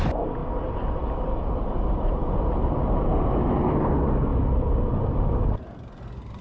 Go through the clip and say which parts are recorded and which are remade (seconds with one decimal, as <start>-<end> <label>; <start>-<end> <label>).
0.0-6.4 recorded